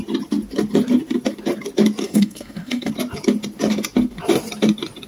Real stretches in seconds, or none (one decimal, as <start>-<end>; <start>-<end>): 0.0-2.0; 2.9-5.1